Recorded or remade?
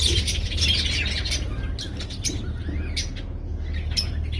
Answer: recorded